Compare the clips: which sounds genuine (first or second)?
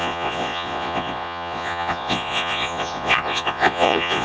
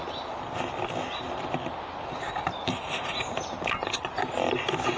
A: second